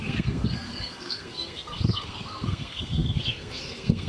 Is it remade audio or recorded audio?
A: remade